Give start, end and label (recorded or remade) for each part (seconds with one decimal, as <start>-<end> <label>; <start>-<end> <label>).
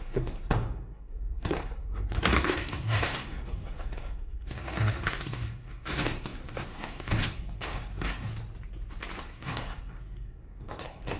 0.0-8.3 remade; 8.3-9.2 recorded; 9.2-11.2 remade